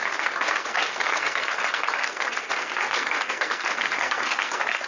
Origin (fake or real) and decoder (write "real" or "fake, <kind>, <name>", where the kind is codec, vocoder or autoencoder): fake, codec, SNAC